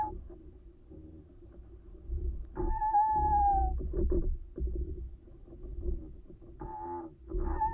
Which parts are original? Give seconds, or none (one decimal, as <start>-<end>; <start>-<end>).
none